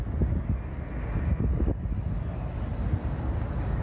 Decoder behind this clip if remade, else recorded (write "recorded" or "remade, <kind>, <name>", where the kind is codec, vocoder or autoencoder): recorded